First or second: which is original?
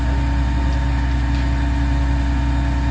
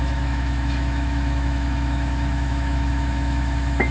first